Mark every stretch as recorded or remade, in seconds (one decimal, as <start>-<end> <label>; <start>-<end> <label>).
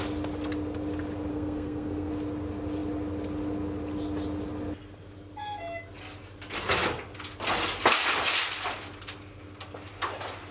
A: 0.0-1.3 recorded; 1.3-2.1 remade; 2.1-10.5 recorded